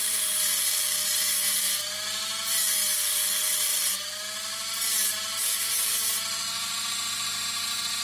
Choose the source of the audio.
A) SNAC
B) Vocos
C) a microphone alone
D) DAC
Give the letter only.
C